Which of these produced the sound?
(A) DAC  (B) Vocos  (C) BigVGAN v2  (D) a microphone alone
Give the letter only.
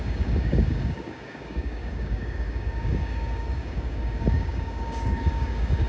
A